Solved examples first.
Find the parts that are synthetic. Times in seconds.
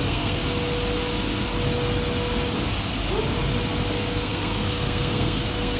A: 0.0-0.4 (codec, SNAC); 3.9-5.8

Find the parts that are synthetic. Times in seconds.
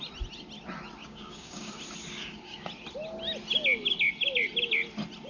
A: 1.0-1.7 (codec, DAC); 2.1-2.7